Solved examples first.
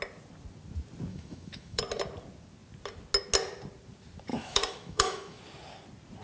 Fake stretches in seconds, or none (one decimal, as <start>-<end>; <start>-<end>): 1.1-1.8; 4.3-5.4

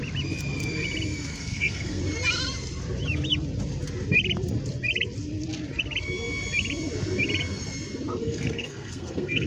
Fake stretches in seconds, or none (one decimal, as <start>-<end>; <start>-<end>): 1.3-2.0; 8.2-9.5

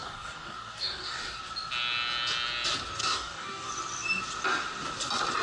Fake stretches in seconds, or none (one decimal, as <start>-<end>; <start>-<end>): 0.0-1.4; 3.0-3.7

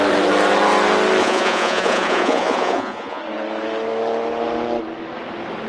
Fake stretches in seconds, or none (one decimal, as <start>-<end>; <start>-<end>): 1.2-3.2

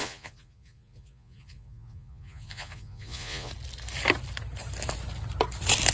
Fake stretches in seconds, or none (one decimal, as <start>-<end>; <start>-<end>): 0.0-3.5

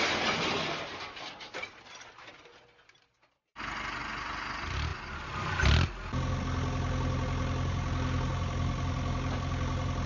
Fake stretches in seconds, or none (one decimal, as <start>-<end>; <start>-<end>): none

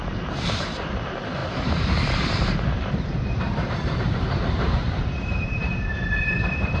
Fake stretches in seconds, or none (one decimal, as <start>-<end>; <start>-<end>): 0.0-6.8